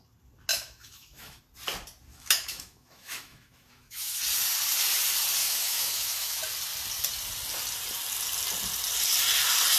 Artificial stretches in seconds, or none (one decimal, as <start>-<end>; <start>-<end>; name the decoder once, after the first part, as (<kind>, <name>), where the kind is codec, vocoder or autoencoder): 0.5-1.4 (autoencoder, DAC-VAE); 2.1-4.2; 5.4-6.4